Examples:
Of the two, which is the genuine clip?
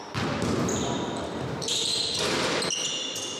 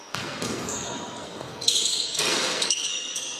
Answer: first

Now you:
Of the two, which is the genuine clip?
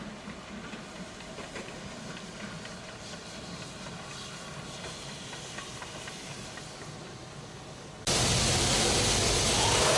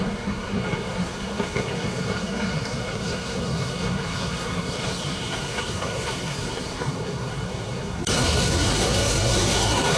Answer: first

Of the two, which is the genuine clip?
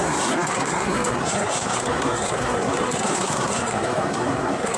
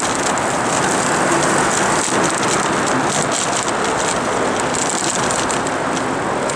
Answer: second